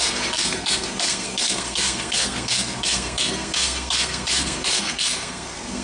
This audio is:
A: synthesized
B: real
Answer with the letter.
A